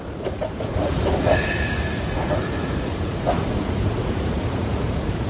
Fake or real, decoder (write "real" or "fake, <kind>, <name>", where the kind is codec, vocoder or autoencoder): fake, vocoder, Vocos